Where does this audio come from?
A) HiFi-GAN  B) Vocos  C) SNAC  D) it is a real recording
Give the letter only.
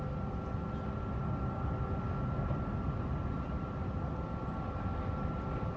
D